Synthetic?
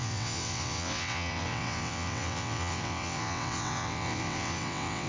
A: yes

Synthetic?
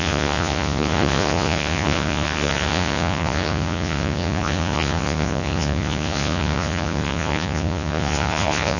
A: yes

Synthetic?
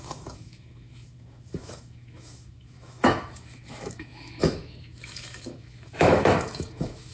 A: yes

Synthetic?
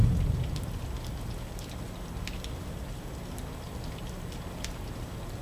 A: no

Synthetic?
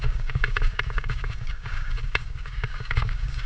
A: yes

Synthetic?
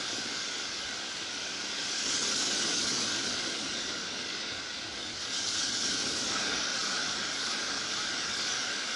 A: yes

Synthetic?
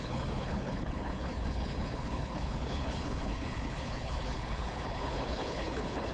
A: yes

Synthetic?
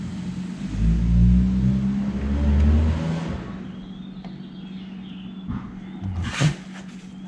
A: no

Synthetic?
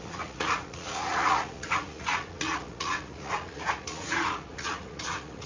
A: yes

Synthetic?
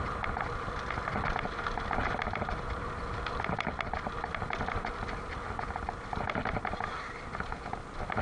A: no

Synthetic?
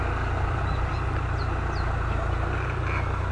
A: no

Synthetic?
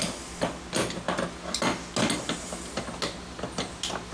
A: no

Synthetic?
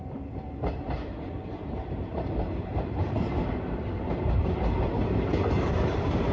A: yes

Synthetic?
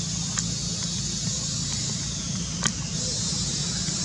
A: no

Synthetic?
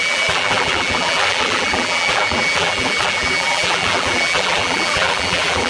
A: yes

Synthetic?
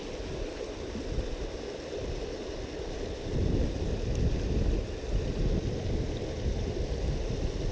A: no